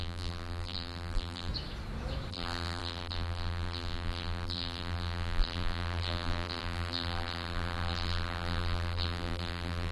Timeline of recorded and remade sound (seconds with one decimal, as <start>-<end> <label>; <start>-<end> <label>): 0.0-1.5 remade; 1.5-2.3 recorded; 2.3-9.9 remade